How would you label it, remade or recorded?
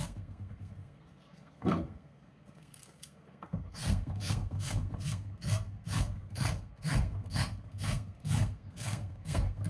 remade